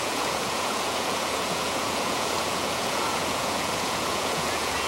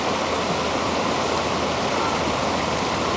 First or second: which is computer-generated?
first